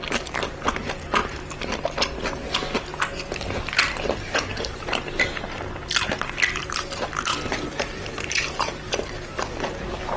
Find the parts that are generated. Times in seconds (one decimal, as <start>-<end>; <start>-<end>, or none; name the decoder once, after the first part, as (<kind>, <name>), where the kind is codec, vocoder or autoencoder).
6.6-9.0 (vocoder, BigVGAN v2)